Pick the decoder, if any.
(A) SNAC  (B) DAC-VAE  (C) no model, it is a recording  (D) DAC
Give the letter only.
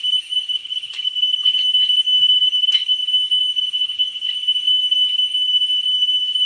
D